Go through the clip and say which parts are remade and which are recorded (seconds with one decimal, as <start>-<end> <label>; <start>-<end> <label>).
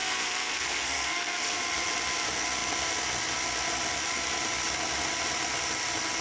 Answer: 0.0-1.6 remade; 1.6-6.2 recorded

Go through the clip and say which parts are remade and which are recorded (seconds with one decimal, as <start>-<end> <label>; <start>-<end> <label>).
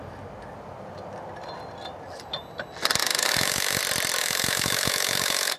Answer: 0.0-3.0 recorded; 3.0-3.8 remade; 3.8-4.2 recorded; 4.2-5.6 remade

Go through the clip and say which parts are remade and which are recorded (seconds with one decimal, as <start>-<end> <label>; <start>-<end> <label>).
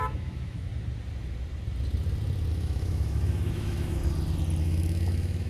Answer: 0.0-0.7 remade; 0.7-2.5 recorded; 2.5-4.0 remade; 4.0-4.6 recorded; 4.6-5.5 remade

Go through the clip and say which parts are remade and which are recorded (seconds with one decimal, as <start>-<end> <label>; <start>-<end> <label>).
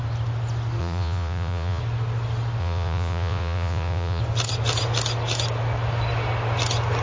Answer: 0.0-0.8 recorded; 0.8-1.8 remade; 1.8-2.6 recorded; 2.6-4.2 remade; 4.2-7.0 recorded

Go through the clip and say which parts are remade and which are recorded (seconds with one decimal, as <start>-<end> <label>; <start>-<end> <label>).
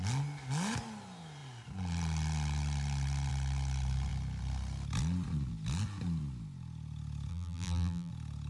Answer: 0.0-7.3 recorded; 7.3-8.1 remade; 8.1-8.5 recorded